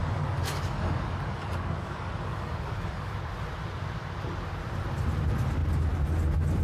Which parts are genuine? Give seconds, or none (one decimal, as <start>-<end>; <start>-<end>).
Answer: 3.1-6.6